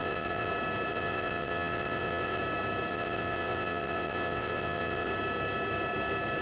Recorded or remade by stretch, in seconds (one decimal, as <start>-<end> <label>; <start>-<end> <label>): 0.0-0.5 remade; 0.5-0.9 recorded; 0.9-2.4 remade; 2.4-2.9 recorded; 2.9-5.1 remade; 5.1-6.4 recorded